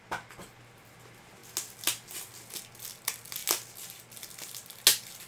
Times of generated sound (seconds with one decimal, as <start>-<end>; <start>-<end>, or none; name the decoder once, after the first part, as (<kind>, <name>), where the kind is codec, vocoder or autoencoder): none